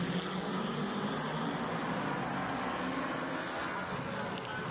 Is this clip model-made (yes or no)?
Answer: no